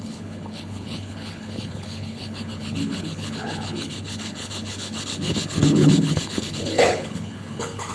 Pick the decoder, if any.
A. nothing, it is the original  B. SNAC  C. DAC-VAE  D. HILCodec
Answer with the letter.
D